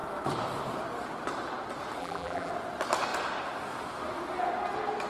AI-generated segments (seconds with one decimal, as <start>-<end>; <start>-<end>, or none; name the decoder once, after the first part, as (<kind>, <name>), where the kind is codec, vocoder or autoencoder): 2.0-2.5 (vocoder, BigVGAN v2)